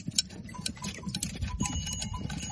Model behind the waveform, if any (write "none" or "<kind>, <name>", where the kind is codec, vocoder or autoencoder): none